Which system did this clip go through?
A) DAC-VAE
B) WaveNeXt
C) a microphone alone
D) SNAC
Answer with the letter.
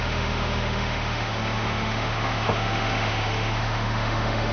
A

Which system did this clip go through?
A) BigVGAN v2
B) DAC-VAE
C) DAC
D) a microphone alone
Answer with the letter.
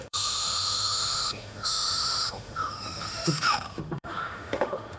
B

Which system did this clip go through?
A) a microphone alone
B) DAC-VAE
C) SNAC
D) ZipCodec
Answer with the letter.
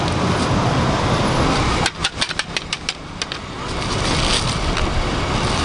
A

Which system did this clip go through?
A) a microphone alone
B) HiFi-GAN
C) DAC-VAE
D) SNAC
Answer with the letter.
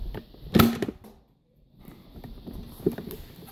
A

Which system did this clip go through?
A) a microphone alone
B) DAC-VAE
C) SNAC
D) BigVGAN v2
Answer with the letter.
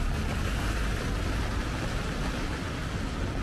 A